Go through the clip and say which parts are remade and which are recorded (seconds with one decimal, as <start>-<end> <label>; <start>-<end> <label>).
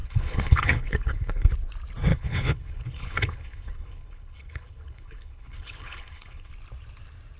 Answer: 0.0-1.5 remade; 1.5-2.1 recorded; 2.1-6.5 remade; 6.5-7.4 recorded